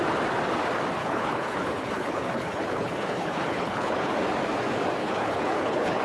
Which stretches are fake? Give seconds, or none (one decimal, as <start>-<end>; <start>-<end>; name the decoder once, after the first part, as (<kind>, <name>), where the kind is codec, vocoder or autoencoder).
1.0-4.1 (codec, HILCodec); 5.0-6.0